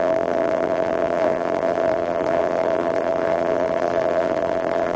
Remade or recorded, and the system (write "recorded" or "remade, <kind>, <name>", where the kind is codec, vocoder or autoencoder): remade, vocoder, BigVGAN v2